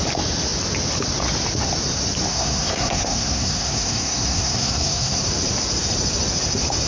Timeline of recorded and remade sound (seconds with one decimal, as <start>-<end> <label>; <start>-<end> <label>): 0.0-2.3 recorded; 2.3-5.2 remade; 5.2-6.9 recorded